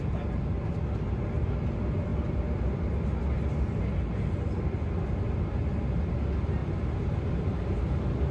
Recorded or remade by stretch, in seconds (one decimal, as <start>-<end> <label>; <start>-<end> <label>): 0.0-8.3 recorded